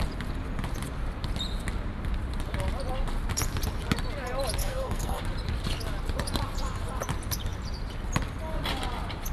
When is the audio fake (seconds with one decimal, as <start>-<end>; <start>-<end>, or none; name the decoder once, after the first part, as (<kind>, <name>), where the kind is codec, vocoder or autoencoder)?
4.6-5.2 (codec, SNAC)